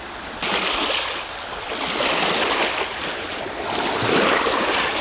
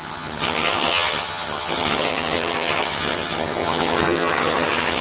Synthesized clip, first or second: second